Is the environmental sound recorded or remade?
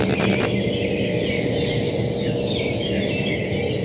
recorded